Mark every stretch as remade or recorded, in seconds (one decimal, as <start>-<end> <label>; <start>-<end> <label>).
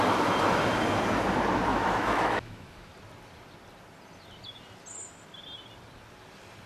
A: 0.0-1.7 recorded; 1.7-2.9 remade; 2.9-6.7 recorded